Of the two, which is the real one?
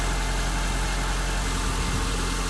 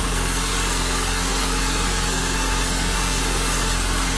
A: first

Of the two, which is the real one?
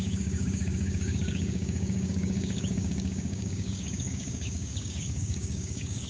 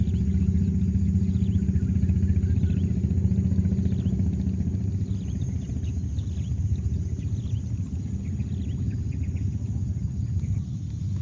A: second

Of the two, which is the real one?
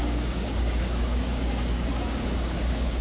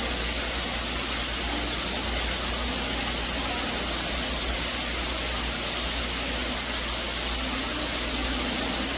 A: second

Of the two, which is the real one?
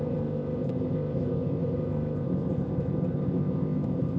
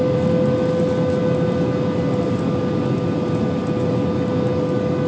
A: second